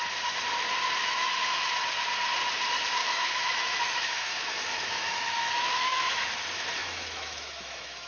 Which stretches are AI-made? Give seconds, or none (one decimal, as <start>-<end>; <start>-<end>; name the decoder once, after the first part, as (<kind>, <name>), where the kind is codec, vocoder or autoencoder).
1.0-1.7 (autoencoder, DAC-VAE); 3.0-6.3; 6.8-8.1